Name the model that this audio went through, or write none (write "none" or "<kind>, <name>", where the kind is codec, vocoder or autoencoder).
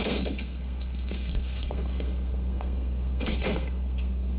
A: codec, SNAC